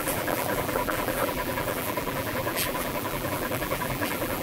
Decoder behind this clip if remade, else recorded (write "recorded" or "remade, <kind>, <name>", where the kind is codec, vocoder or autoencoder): remade, vocoder, BigVGAN v2